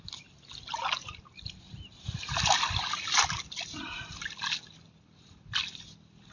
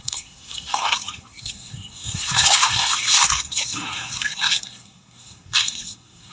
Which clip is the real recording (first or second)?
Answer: first